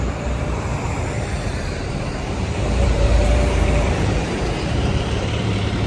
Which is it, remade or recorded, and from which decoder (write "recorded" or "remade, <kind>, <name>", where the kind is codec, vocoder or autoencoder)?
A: remade, vocoder, BigVGAN v2